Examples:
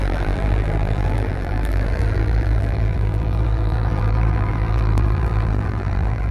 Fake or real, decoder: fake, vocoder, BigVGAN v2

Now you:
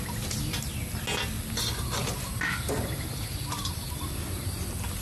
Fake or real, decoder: real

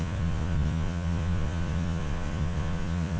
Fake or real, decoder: fake, vocoder, Vocos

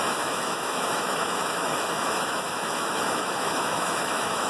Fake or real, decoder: fake, autoencoder, DAC-VAE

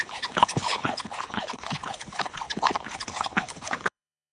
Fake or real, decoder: fake, codec, HILCodec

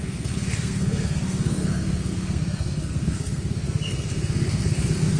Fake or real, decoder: fake, codec, SNAC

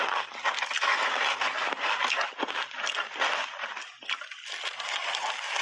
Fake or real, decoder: real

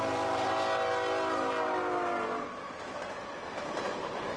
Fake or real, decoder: real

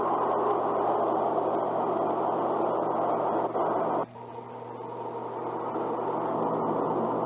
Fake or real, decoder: real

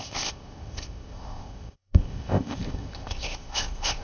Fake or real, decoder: fake, codec, ZipCodec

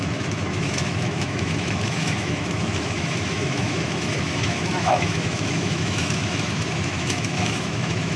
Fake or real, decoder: fake, autoencoder, DAC-VAE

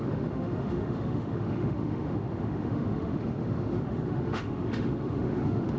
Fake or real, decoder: fake, autoencoder, DAC-VAE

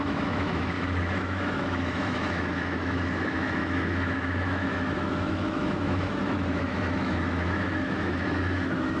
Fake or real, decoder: fake, autoencoder, DAC-VAE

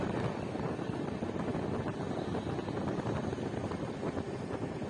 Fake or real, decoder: real